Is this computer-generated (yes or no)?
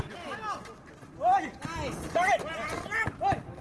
no